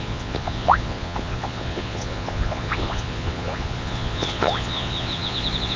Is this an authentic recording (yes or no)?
no